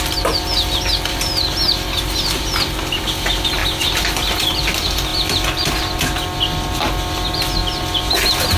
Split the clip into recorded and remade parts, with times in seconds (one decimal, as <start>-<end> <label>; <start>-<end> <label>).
0.0-8.6 recorded